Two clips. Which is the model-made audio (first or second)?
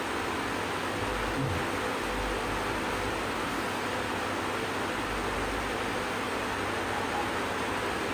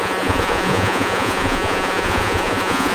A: second